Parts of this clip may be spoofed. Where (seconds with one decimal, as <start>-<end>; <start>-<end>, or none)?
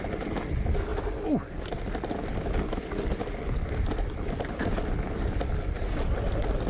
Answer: none